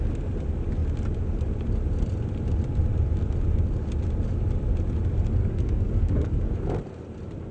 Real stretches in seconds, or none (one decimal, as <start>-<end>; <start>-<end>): 0.0-5.4; 6.5-7.5